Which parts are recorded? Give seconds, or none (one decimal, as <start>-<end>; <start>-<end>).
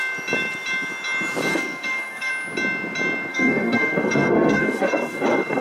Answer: 0.0-1.5; 2.3-3.3